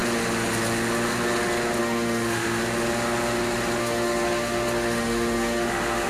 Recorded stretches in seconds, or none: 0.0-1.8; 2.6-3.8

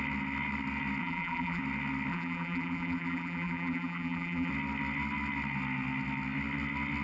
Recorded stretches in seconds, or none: 0.0-1.0; 1.6-2.1; 4.5-7.0

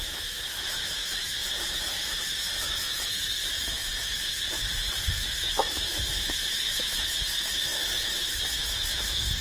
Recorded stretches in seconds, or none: none